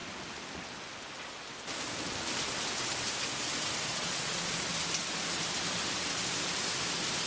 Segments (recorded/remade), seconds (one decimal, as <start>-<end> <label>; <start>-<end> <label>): 0.0-3.9 recorded; 3.9-4.5 remade; 4.5-7.3 recorded